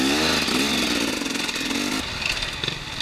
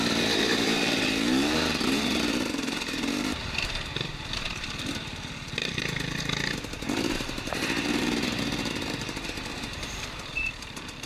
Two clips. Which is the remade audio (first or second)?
second